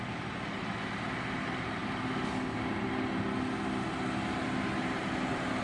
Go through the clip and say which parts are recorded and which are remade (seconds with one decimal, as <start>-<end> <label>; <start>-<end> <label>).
0.0-5.6 recorded